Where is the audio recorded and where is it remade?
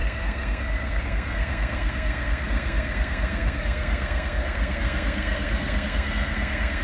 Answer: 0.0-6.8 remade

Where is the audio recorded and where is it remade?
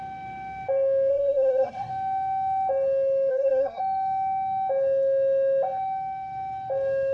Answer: 0.0-1.1 recorded; 1.1-1.9 remade; 1.9-3.3 recorded; 3.3-3.8 remade; 3.8-7.1 recorded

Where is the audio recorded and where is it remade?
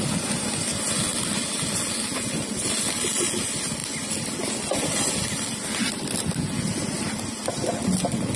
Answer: 0.0-8.4 recorded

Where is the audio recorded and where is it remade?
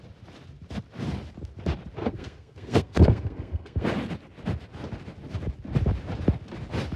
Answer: 0.0-2.0 recorded; 2.0-3.9 remade; 3.9-7.0 recorded